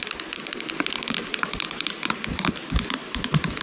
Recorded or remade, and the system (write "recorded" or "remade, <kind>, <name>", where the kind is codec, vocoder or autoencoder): remade, vocoder, BigVGAN v2